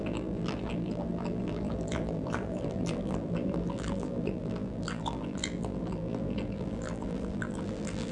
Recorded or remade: remade